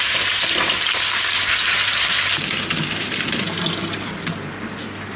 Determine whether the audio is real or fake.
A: real